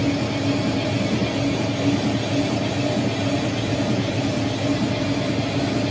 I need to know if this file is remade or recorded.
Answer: recorded